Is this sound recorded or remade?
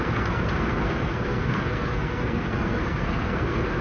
remade